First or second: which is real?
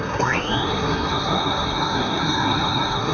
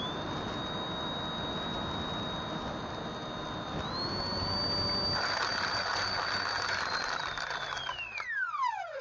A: second